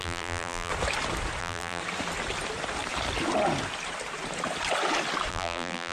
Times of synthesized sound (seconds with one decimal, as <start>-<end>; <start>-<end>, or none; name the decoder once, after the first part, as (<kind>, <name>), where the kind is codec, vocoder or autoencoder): 0.0-0.7 (vocoder, BigVGAN v2); 1.4-1.8; 5.3-5.9